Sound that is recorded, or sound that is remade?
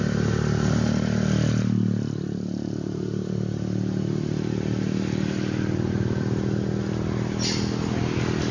recorded